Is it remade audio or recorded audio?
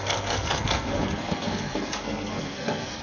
remade